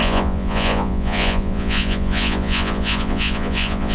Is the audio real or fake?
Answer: fake